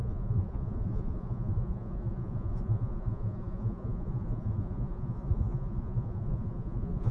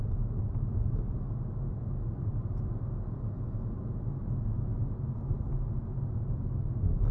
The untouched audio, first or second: second